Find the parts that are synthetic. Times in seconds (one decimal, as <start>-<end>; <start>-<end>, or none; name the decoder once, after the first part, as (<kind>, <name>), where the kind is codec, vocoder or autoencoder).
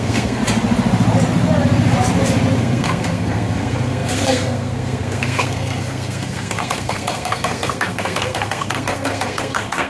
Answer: 0.0-0.4 (codec, SNAC); 2.6-9.9